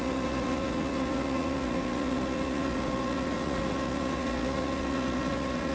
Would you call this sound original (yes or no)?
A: no